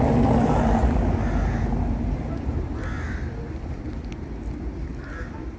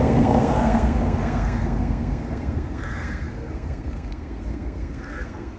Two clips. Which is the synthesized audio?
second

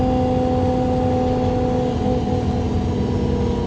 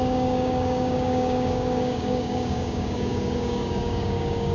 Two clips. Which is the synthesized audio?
second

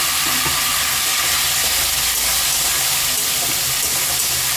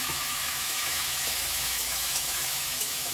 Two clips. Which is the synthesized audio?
second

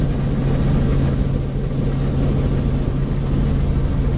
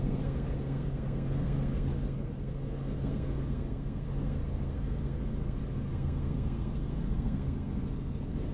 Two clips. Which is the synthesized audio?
second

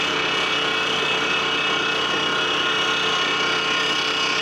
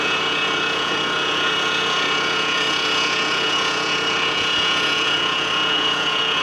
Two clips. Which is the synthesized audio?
second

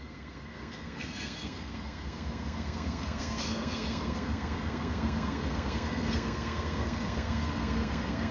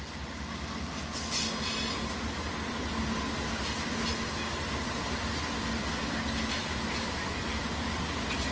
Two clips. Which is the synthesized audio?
first